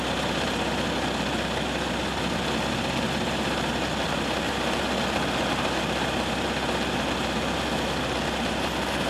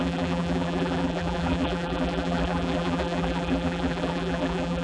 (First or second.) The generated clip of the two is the second